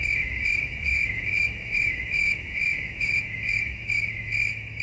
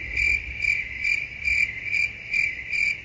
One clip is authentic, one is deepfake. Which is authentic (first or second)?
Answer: second